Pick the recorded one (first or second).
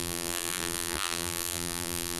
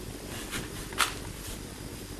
second